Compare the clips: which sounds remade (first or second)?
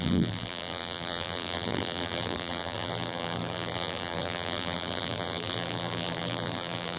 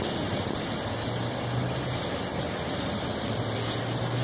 first